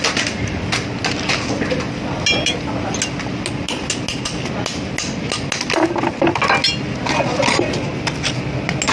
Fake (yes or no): no